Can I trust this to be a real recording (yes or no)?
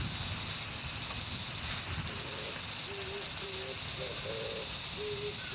yes